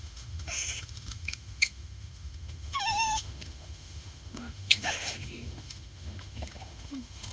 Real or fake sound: fake